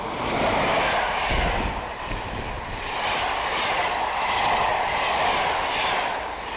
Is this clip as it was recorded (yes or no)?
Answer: yes